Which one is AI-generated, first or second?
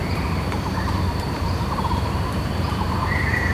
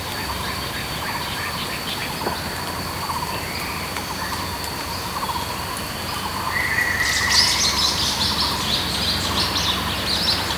first